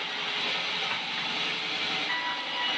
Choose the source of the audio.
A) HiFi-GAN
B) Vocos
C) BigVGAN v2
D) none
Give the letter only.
D